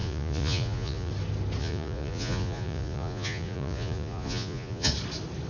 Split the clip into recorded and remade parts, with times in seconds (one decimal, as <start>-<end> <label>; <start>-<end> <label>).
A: 0.0-1.1 remade; 1.1-1.6 recorded; 1.6-4.9 remade; 4.9-5.5 recorded